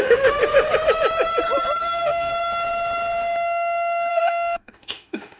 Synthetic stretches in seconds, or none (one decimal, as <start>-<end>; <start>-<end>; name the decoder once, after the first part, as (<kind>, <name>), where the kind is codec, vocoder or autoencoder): 0.0-0.4 (autoencoder, DAC-VAE); 1.8-2.3; 4.1-5.4